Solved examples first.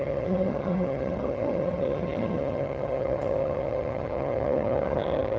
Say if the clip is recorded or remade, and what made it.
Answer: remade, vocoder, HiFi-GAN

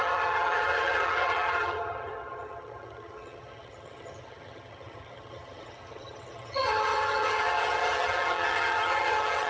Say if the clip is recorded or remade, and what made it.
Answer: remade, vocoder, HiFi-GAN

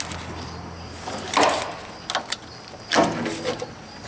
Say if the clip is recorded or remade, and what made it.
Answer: recorded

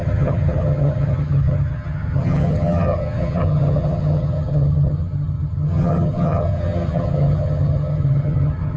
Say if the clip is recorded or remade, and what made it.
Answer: remade, vocoder, HiFi-GAN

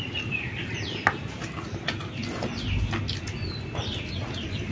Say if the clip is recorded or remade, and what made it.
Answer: recorded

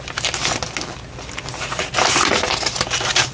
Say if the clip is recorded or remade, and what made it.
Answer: recorded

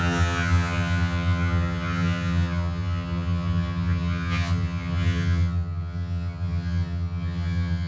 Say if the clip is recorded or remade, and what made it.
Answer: remade, vocoder, HiFi-GAN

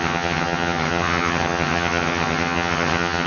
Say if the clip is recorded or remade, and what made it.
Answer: remade, vocoder, HiFi-GAN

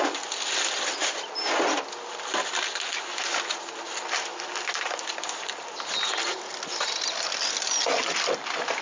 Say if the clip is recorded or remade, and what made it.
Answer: recorded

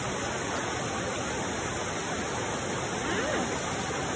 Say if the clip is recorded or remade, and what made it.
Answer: recorded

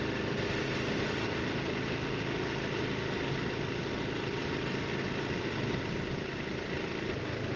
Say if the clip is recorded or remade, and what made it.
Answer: recorded